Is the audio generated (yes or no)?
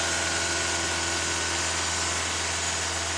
no